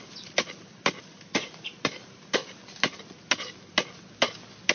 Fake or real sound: real